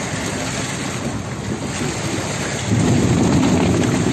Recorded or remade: recorded